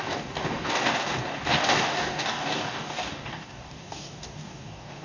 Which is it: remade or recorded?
remade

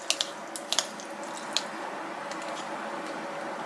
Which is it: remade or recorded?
recorded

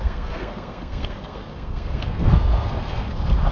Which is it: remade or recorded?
remade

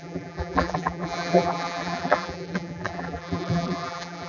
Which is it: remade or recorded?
remade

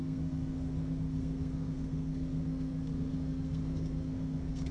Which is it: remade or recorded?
remade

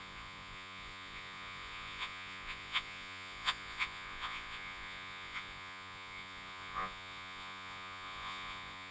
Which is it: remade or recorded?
remade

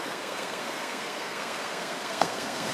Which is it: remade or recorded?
remade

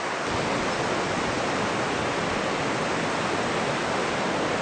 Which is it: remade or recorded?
recorded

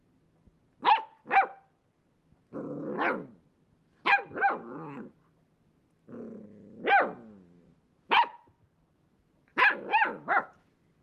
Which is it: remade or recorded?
recorded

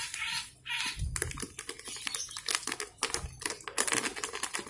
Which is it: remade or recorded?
recorded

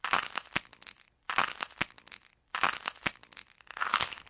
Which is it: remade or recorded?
recorded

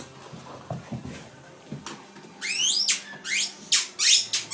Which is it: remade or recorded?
recorded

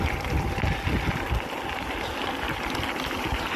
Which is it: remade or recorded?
recorded